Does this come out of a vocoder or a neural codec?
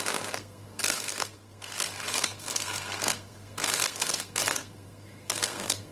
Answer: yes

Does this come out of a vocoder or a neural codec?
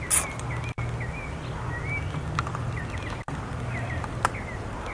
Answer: no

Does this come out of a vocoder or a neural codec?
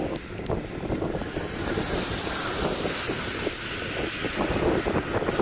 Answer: no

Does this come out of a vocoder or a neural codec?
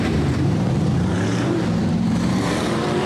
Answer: yes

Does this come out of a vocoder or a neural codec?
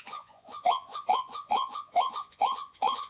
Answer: yes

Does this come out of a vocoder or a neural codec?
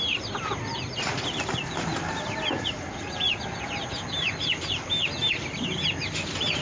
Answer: no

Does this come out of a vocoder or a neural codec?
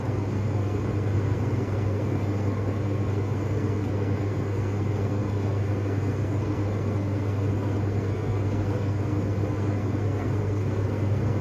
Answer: yes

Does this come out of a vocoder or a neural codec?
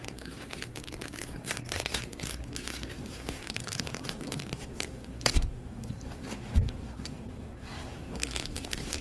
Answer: yes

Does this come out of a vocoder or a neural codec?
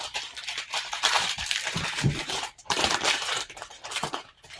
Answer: yes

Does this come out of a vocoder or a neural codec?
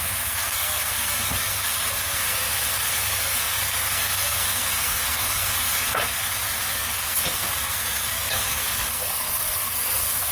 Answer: yes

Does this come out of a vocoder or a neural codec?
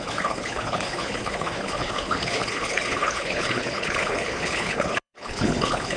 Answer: yes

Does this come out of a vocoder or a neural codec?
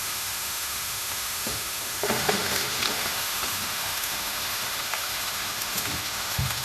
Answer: yes